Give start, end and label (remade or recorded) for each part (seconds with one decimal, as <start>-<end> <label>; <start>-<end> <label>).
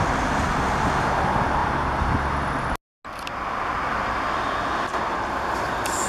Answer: 0.0-6.1 recorded